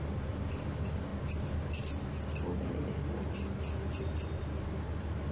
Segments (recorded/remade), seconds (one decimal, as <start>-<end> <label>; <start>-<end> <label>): 0.0-5.3 recorded